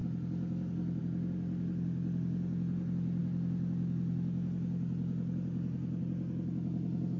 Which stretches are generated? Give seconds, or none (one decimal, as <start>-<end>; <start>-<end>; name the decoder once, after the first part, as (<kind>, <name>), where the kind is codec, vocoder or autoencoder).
none